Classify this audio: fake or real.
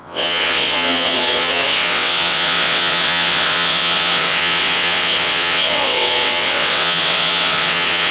fake